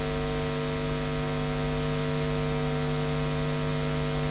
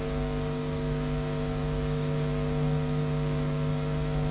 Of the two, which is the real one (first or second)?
first